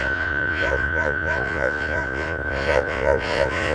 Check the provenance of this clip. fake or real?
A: fake